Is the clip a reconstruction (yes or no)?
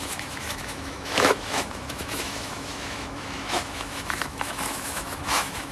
yes